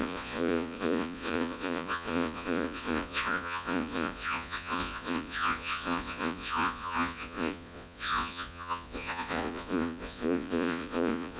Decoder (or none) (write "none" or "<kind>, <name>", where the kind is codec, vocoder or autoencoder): vocoder, Vocos